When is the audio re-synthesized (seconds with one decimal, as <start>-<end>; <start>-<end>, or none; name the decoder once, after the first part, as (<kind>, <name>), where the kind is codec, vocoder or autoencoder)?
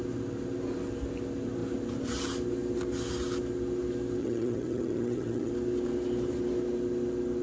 4.2-5.5 (vocoder, HiFi-GAN)